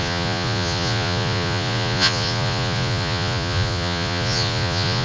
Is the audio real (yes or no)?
no